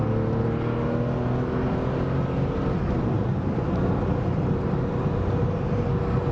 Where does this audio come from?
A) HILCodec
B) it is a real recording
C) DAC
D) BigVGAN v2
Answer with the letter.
B